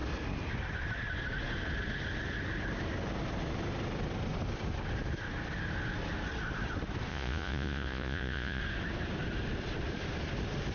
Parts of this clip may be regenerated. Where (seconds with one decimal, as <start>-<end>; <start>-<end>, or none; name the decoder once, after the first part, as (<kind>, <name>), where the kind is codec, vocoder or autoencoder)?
7.1-8.6 (vocoder, Vocos)